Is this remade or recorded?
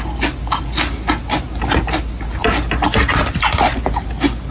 recorded